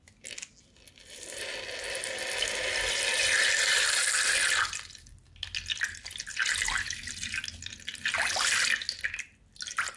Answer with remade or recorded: recorded